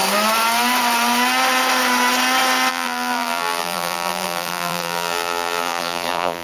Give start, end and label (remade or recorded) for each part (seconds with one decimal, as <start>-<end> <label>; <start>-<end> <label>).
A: 0.0-2.7 recorded; 2.7-6.4 remade